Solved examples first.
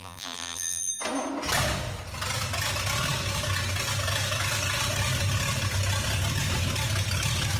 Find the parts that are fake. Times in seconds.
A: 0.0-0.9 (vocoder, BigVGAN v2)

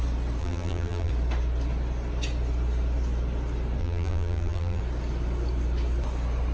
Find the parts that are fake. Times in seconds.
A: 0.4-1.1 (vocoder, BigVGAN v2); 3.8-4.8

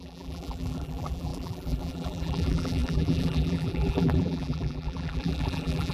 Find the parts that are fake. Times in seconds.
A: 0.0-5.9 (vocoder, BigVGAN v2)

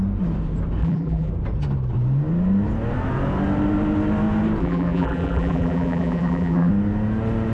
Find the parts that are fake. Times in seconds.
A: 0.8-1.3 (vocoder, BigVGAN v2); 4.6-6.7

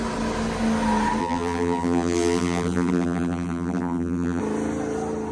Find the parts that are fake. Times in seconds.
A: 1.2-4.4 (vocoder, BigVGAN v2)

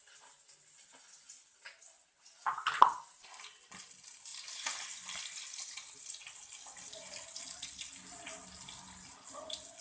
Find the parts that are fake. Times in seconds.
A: 4.3-7.4 (vocoder, BigVGAN v2)

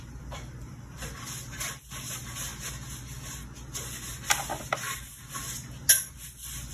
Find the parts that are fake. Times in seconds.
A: 0.0-2.5 (vocoder, BigVGAN v2)

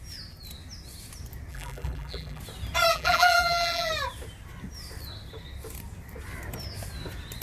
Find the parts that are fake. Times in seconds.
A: 1.5-2.4 (vocoder, BigVGAN v2); 2.9-3.9